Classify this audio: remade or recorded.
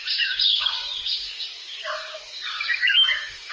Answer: remade